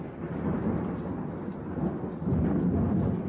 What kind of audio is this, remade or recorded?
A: recorded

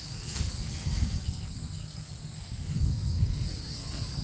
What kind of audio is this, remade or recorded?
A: remade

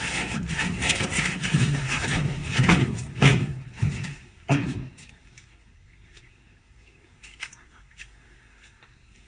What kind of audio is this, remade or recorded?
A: remade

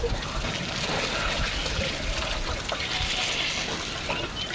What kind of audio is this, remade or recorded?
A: recorded